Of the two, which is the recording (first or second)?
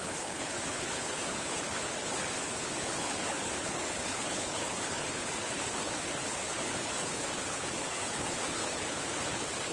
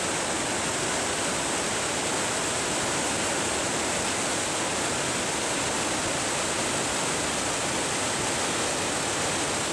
second